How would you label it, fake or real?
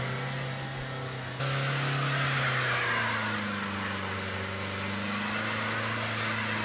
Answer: real